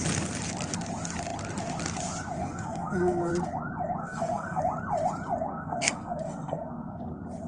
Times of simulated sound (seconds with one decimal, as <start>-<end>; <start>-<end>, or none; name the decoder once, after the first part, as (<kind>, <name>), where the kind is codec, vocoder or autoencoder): 2.4-3.3 (codec, SNAC); 4.0-4.6; 5.5-7.0